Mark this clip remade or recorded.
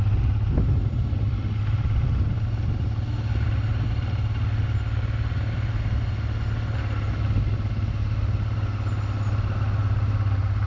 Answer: recorded